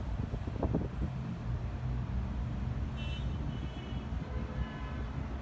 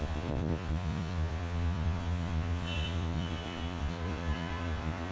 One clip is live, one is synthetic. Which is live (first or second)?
first